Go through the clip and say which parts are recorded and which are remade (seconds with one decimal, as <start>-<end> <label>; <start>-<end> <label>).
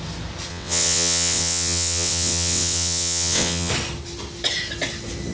0.0-0.5 recorded; 0.5-3.7 remade; 3.7-5.3 recorded